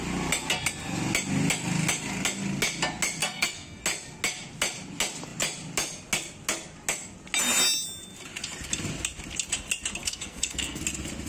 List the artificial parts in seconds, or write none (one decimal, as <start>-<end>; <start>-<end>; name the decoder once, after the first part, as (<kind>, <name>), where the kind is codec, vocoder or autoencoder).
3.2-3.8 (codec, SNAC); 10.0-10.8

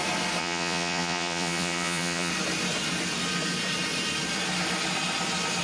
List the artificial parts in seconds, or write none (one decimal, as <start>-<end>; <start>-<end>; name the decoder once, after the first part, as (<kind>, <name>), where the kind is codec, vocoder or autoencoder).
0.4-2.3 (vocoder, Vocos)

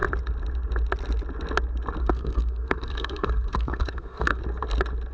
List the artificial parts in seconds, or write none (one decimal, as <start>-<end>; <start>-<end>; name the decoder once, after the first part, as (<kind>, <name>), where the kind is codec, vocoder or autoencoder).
2.0-4.4 (codec, SNAC)

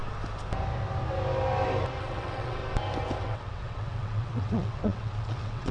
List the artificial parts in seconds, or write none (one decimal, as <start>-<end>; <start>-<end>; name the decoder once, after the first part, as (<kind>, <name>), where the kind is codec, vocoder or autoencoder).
2.0-2.6 (vocoder, WaveNeXt); 3.2-5.7

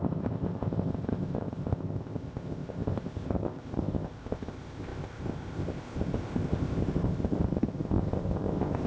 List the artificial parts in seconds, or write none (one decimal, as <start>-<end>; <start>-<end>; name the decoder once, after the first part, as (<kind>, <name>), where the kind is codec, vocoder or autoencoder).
0.0-8.9 (codec, ZipCodec)